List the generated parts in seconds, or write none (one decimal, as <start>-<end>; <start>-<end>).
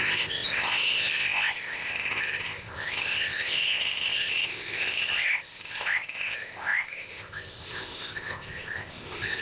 0.0-9.4